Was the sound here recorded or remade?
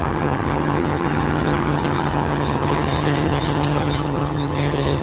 remade